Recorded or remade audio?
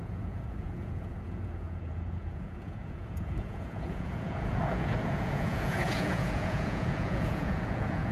remade